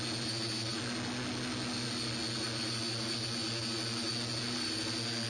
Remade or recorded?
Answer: recorded